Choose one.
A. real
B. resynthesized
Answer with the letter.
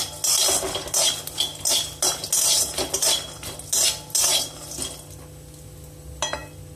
A